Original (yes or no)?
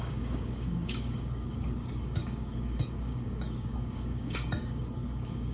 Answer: no